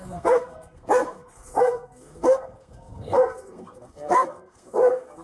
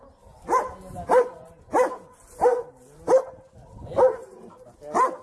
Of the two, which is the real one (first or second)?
second